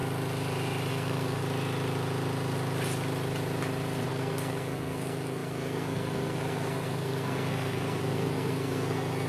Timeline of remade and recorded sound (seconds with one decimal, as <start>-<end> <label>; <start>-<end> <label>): 0.0-0.9 recorded; 0.9-1.4 remade; 1.4-4.1 recorded; 4.1-9.3 remade